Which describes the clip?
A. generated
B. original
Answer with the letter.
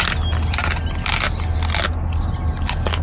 B